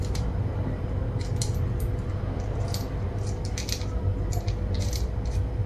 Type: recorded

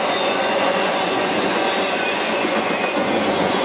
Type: remade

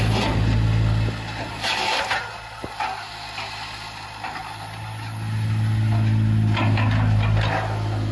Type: recorded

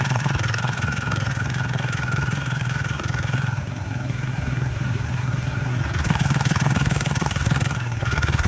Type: remade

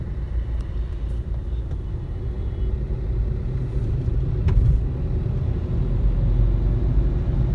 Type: recorded